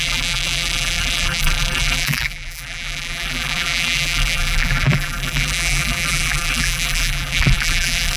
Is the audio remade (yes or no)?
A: yes